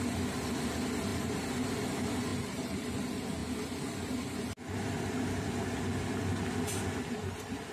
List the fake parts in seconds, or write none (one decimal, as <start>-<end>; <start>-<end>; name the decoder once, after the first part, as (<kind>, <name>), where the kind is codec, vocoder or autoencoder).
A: 1.1-1.7 (vocoder, BigVGAN v2); 2.3-2.9